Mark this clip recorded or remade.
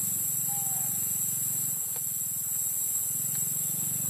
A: recorded